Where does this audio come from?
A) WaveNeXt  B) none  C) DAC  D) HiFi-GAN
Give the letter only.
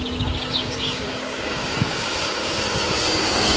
C